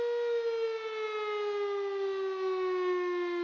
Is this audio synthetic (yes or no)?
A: no